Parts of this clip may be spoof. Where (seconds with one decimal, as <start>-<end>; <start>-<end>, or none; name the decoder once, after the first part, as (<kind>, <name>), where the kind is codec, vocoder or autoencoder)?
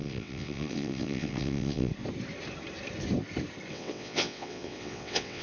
0.0-1.9 (vocoder, WaveNeXt); 3.7-5.4